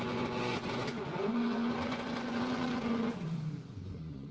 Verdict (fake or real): fake